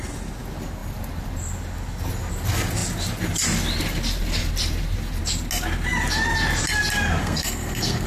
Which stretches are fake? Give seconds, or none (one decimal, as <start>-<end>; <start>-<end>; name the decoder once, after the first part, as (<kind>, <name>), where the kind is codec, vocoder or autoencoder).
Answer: 7.2-8.1 (codec, SNAC)